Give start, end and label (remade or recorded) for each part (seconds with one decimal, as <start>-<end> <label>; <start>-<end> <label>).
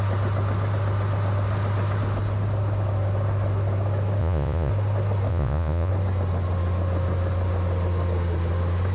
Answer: 0.0-4.2 recorded; 4.2-4.7 remade; 4.7-5.3 recorded; 5.3-5.9 remade; 5.9-8.9 recorded